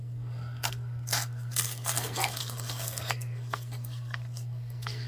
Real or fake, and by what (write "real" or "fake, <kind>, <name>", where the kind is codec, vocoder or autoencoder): fake, codec, SNAC